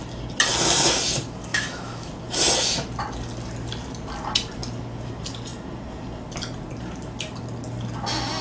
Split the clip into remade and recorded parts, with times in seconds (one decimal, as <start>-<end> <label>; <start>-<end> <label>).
0.0-1.5 recorded; 1.5-2.1 remade; 2.1-8.4 recorded